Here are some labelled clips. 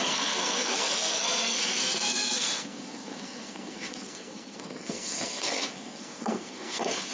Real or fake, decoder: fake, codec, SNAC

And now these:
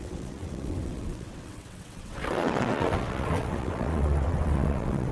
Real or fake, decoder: fake, vocoder, WaveNeXt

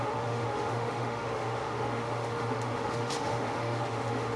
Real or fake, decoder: fake, autoencoder, DAC-VAE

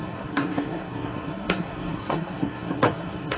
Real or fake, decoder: fake, codec, SNAC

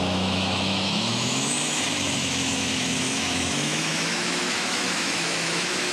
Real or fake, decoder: fake, autoencoder, DAC-VAE